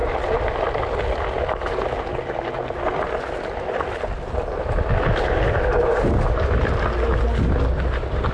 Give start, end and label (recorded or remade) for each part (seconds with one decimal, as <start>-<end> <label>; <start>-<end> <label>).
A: 0.0-8.3 recorded